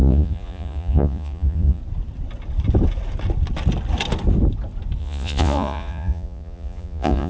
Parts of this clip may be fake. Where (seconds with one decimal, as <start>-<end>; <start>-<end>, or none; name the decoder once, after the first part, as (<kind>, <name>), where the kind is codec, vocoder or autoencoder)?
0.0-1.8 (vocoder, Vocos); 5.0-7.3